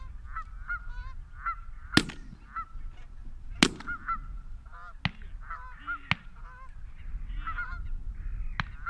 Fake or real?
real